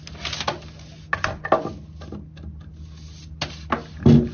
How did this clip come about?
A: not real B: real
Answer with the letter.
B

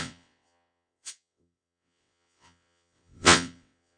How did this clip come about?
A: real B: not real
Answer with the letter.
B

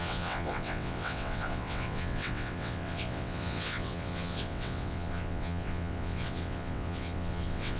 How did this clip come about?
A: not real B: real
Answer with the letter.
A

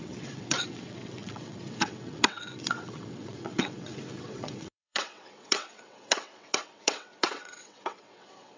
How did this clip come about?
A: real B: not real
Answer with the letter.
B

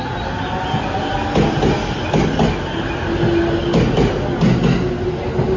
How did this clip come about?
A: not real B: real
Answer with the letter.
B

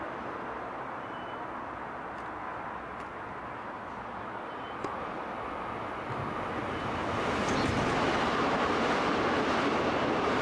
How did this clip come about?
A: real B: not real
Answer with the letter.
A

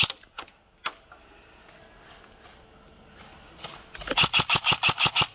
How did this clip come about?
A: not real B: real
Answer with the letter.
B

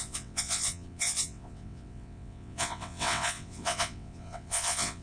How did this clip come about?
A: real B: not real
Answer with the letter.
B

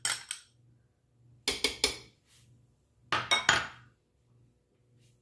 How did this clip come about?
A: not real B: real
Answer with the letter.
B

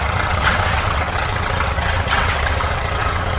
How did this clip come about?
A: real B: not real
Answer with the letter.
B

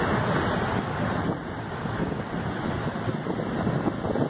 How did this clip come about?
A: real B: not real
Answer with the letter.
A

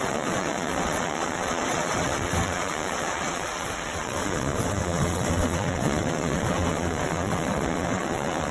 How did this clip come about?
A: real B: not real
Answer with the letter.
B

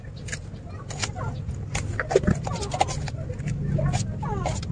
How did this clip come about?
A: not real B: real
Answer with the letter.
B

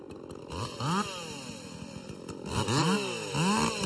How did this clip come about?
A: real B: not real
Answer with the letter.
A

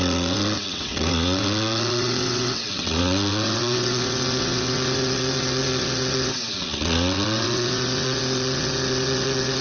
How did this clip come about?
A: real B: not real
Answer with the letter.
B